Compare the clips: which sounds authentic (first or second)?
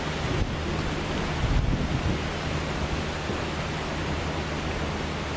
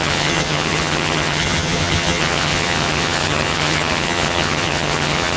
first